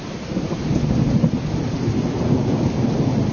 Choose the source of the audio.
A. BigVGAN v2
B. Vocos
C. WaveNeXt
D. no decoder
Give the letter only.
D